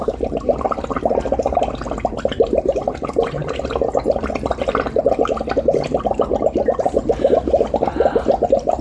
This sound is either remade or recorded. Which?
recorded